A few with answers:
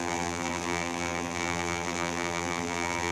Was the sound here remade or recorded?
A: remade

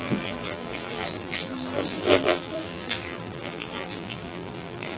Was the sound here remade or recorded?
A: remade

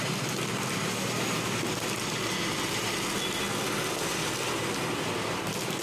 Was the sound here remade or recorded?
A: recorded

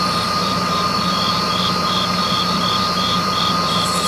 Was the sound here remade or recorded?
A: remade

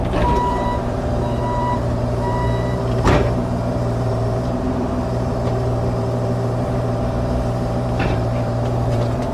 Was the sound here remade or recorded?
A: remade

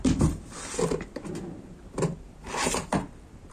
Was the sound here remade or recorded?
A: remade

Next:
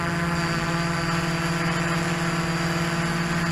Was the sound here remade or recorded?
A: recorded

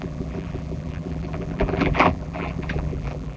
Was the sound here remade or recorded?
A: remade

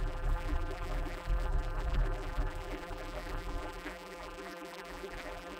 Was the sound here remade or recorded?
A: remade